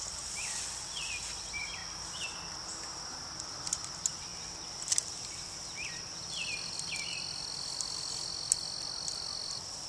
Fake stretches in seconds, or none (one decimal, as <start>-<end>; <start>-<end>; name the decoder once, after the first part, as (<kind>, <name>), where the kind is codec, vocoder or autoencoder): none